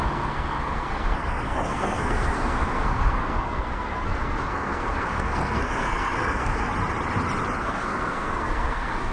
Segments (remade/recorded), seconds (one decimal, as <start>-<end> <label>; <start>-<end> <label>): 0.0-6.7 remade; 6.7-7.6 recorded; 7.6-9.1 remade